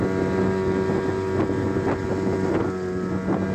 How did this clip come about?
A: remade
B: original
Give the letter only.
B